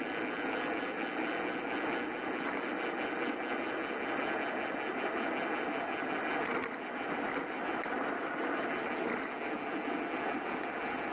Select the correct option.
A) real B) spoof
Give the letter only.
A